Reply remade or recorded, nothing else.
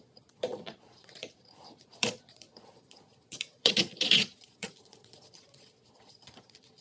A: remade